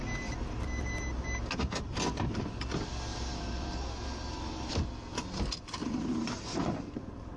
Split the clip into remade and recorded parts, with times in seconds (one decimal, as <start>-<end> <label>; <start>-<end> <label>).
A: 0.0-3.1 recorded; 3.1-3.9 remade; 3.9-5.8 recorded; 5.8-7.4 remade